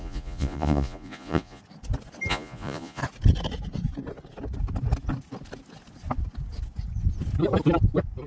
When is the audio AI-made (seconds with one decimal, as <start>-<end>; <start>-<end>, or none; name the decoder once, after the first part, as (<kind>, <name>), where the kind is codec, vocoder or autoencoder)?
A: 0.0-1.6 (vocoder, Vocos); 2.3-3.0